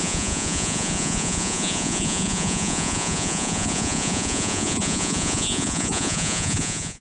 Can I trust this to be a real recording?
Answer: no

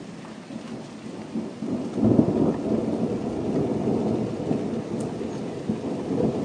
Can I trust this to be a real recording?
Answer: yes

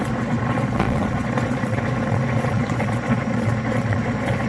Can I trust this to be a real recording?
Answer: no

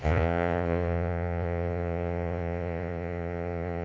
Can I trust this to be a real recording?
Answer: no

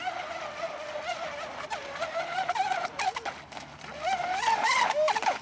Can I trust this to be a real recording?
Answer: yes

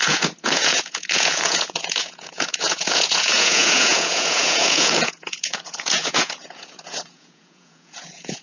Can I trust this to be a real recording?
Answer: no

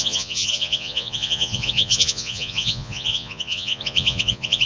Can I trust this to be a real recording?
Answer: no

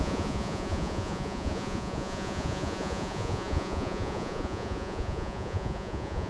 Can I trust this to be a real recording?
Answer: no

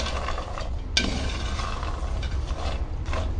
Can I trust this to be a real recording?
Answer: yes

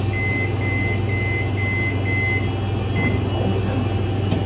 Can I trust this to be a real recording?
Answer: yes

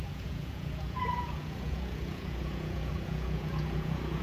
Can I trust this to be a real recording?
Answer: no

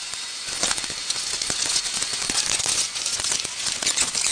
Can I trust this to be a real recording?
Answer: no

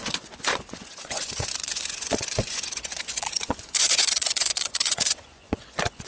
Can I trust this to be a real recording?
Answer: no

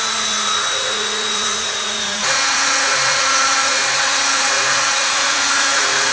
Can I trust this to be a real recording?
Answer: no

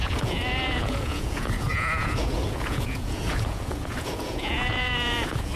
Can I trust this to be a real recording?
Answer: no